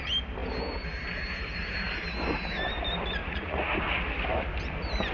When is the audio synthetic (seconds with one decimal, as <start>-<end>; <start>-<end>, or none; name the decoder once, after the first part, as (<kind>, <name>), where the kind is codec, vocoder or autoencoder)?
3.2-3.7 (vocoder, Vocos)